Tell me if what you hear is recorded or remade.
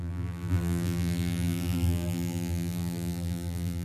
remade